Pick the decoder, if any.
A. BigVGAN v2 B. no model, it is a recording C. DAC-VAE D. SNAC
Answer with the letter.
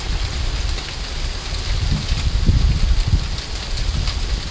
B